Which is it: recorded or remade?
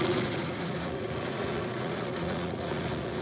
remade